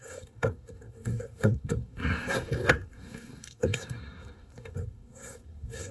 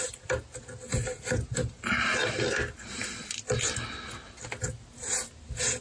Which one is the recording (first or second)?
second